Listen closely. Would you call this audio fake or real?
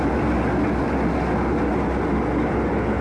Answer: real